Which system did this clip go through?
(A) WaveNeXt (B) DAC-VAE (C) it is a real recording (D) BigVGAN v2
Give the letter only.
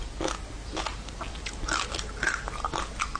C